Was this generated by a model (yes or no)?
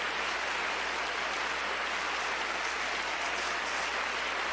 no